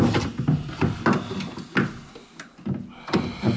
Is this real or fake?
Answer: real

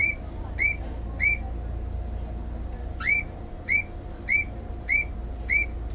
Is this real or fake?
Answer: real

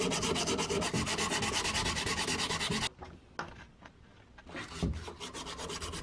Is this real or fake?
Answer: real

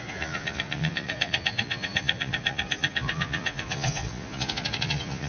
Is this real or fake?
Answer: fake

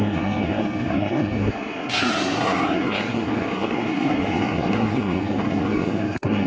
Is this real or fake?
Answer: fake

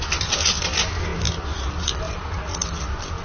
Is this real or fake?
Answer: real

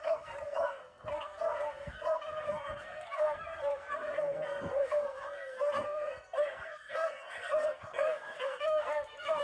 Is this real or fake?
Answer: fake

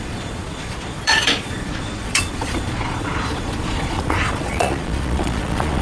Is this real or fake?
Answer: fake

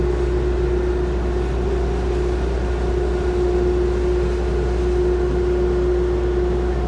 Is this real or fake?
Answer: real